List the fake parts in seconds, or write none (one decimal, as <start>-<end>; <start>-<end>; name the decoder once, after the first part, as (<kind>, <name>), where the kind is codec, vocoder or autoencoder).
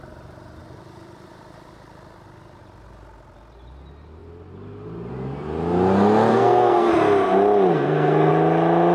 6.3-6.9 (codec, SNAC); 7.7-8.3